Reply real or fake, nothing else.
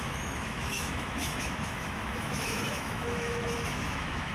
fake